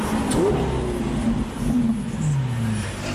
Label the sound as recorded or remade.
recorded